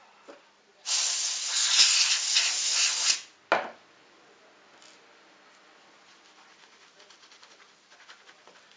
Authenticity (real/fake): real